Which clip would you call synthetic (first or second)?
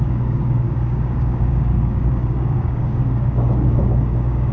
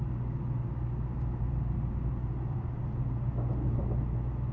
first